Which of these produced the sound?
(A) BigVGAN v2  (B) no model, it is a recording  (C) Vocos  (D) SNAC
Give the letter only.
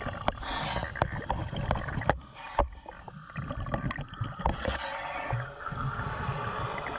B